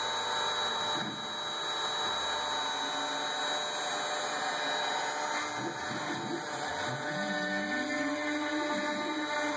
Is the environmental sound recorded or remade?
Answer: recorded